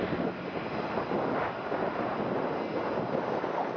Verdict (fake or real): real